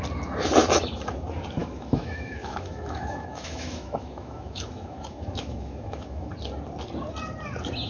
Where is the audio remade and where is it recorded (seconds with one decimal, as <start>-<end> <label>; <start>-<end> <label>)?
0.0-1.6 recorded; 1.6-6.3 remade; 6.3-7.9 recorded